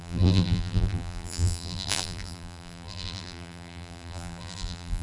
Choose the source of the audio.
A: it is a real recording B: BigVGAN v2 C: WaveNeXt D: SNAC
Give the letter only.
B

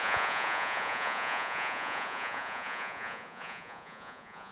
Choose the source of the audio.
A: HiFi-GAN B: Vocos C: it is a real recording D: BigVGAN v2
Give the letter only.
B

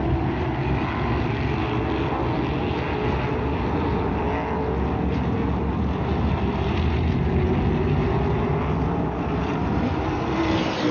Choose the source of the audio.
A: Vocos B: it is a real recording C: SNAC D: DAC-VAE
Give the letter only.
B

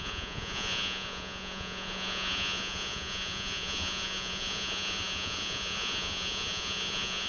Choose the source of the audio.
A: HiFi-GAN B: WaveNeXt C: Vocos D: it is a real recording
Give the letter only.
C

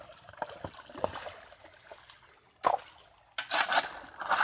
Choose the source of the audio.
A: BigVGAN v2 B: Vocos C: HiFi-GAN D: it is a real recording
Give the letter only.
D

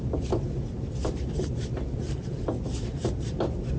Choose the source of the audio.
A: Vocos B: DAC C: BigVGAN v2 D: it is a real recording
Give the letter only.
D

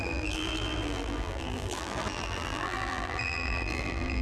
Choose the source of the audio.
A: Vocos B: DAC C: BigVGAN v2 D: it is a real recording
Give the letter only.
C